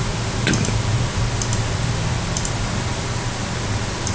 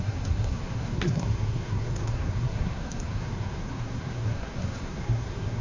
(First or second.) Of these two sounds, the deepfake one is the second